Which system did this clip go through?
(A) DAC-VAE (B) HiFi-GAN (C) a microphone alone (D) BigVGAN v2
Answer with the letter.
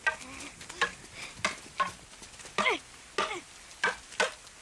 C